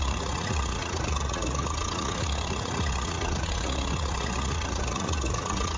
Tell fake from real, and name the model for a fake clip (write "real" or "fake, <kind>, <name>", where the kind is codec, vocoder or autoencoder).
fake, vocoder, Vocos